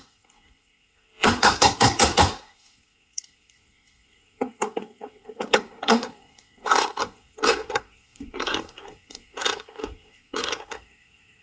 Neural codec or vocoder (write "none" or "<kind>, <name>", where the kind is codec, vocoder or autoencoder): codec, SNAC